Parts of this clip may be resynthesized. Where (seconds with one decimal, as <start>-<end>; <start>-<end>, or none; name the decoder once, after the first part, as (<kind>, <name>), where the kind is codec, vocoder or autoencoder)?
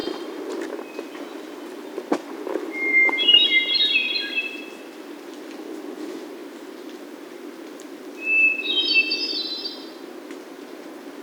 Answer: none